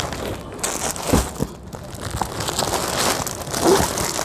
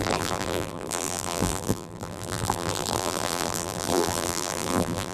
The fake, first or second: second